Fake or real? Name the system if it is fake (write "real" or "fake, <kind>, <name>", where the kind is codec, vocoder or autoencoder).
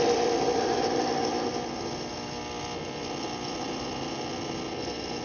real